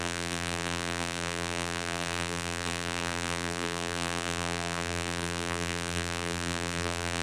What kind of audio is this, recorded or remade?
remade